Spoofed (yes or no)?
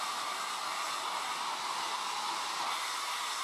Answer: no